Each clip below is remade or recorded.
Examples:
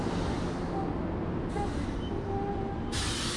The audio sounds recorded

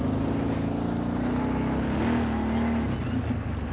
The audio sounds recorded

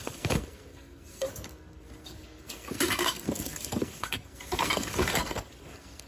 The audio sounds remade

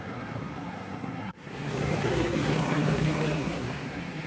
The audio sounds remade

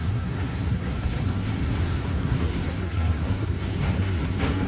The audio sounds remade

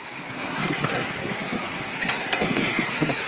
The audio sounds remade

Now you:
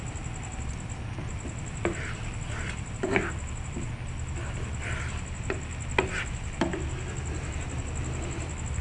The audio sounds recorded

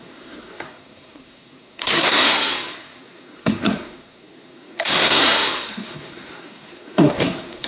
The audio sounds remade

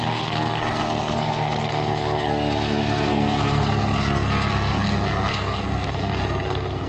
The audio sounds remade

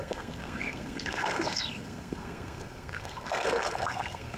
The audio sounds remade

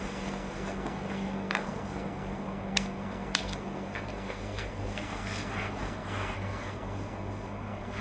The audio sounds remade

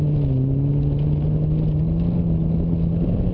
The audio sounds recorded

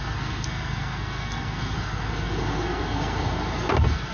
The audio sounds remade